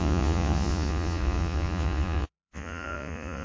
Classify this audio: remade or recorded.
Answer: remade